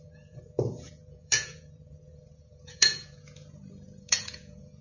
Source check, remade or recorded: remade